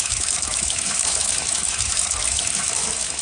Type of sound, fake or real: fake